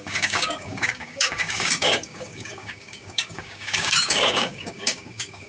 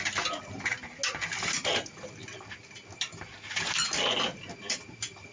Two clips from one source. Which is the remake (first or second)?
first